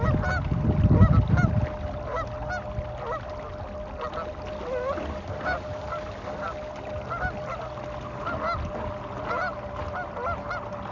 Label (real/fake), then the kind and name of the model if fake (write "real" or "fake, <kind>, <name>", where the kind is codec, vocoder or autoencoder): real